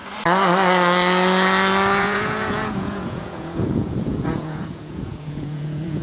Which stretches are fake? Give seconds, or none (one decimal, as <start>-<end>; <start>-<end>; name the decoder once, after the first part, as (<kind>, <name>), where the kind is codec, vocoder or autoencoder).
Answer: 2.0-6.0 (vocoder, Vocos)